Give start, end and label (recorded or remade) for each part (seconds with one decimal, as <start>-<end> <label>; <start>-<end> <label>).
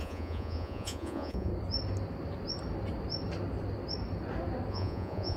0.0-1.5 remade; 1.5-4.7 recorded; 4.7-5.4 remade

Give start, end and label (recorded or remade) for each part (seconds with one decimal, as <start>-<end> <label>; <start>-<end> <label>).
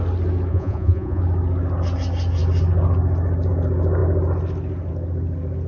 0.0-0.5 recorded; 0.5-1.2 remade; 1.2-5.7 recorded